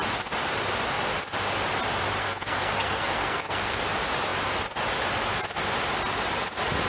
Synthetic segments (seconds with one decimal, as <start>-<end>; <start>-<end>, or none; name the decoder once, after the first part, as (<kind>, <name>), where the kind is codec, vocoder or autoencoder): 2.2-3.8 (codec, SNAC)